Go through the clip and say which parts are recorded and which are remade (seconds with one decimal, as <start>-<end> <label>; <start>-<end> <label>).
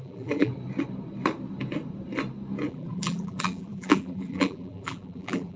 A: 0.0-0.5 remade; 0.5-2.7 recorded; 2.7-5.6 remade